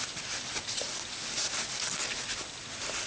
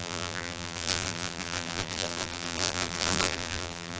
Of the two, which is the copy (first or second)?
second